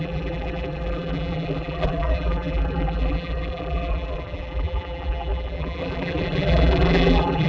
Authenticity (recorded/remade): remade